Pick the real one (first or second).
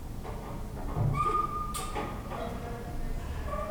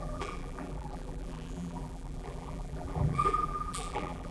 first